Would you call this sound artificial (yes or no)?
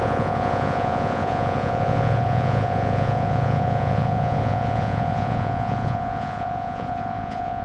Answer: yes